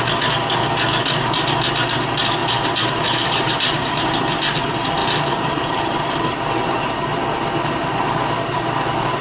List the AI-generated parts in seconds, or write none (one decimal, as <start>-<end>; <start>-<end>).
2.4-4.0; 5.0-6.0